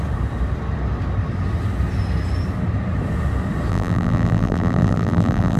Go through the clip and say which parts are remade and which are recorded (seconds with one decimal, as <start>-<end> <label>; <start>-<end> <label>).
0.0-3.7 recorded; 3.7-5.6 remade